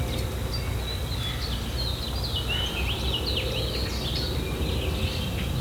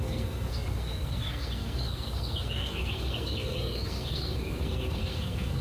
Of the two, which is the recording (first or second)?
first